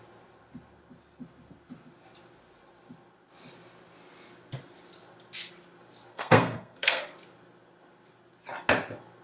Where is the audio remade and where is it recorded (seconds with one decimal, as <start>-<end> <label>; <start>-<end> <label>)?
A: 0.0-6.1 recorded; 6.1-7.0 remade; 7.0-9.2 recorded